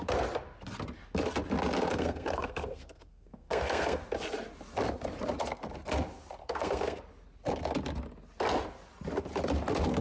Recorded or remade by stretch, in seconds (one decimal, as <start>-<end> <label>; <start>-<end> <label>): 0.0-1.9 recorded; 1.9-4.0 remade; 4.0-6.4 recorded; 6.4-7.0 remade; 7.0-10.0 recorded